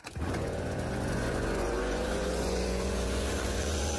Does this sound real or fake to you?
fake